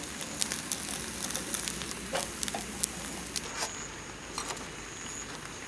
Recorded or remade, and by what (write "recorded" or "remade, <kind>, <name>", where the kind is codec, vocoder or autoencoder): recorded